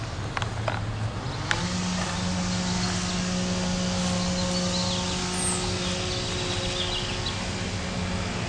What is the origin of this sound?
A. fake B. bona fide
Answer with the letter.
B